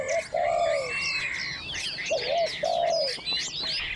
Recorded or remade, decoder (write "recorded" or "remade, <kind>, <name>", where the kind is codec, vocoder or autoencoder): recorded